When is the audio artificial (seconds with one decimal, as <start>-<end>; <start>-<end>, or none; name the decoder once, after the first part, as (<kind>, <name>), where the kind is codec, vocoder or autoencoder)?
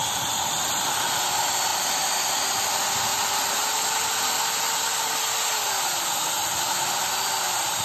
0.0-0.8 (vocoder, BigVGAN v2); 1.7-2.4